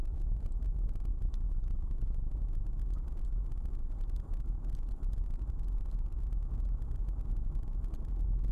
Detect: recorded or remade recorded